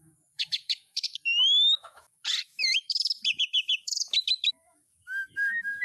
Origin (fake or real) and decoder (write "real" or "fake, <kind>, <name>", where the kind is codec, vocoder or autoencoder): fake, autoencoder, DAC-VAE